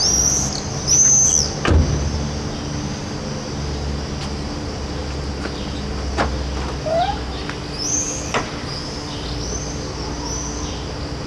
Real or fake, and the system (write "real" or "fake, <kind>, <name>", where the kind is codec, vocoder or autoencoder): real